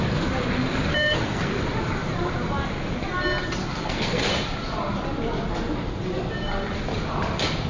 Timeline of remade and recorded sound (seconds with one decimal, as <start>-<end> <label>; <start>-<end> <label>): 0.0-0.9 recorded; 0.9-1.6 remade; 1.6-3.6 recorded; 3.6-4.3 remade; 4.3-7.7 recorded